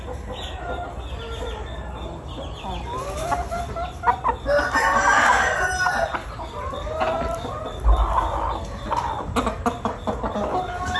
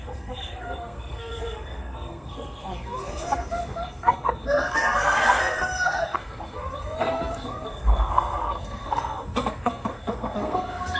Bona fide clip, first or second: first